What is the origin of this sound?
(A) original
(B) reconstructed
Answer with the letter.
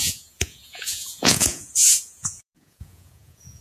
B